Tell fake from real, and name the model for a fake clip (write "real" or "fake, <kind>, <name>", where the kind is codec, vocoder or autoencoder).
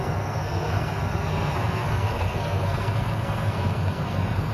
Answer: fake, codec, SNAC